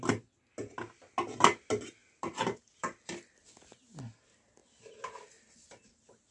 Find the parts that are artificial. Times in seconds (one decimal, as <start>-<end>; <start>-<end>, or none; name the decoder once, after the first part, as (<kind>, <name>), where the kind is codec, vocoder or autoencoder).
2.0-3.8 (vocoder, BigVGAN v2)